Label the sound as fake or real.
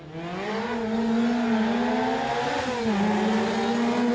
real